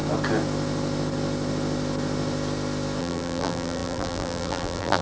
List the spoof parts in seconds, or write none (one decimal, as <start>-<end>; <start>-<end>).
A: 3.0-5.0